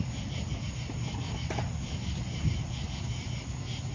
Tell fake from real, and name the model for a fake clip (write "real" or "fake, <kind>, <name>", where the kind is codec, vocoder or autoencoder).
real